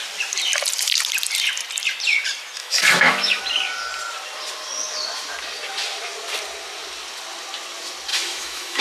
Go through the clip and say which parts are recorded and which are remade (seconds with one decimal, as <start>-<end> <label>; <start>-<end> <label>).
0.0-2.6 recorded; 2.6-3.4 remade; 3.4-8.1 recorded; 8.1-8.8 remade